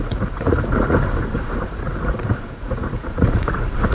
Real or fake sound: fake